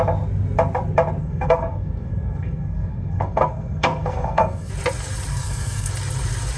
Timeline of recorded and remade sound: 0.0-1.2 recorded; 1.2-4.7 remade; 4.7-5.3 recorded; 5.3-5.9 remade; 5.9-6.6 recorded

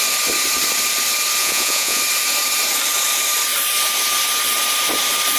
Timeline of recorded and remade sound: 0.0-1.4 recorded; 1.4-2.0 remade; 2.0-5.4 recorded

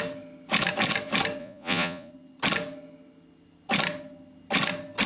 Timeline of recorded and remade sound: 0.0-1.4 recorded; 1.4-2.1 remade; 2.1-5.1 recorded

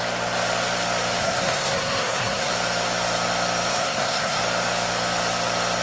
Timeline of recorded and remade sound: 0.0-1.2 recorded; 1.2-2.5 remade; 2.5-3.7 recorded; 3.7-4.4 remade; 4.4-5.8 recorded

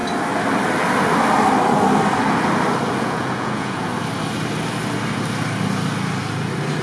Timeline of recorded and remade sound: 0.0-3.0 recorded; 3.0-3.9 remade; 3.9-6.8 recorded

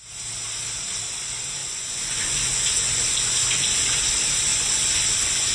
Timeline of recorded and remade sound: 0.0-1.6 recorded; 1.6-4.1 remade; 4.1-4.5 recorded; 4.5-5.5 remade

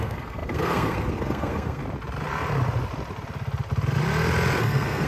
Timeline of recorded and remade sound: 0.0-1.8 remade; 1.8-4.6 recorded; 4.6-5.1 remade